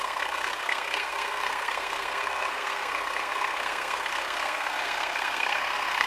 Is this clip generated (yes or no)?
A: yes